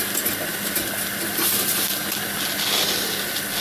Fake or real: real